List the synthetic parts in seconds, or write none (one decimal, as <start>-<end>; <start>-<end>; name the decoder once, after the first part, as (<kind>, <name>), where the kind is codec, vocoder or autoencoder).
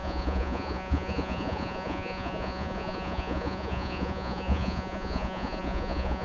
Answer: 0.0-6.2 (vocoder, Vocos)